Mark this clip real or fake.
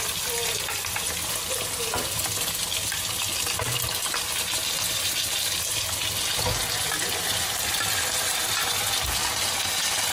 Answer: real